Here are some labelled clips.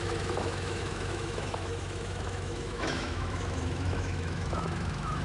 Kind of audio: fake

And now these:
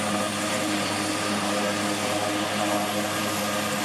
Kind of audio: real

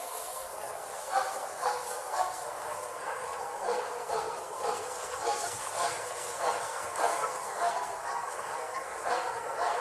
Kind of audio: fake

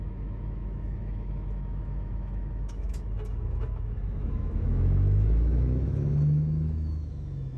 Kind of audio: fake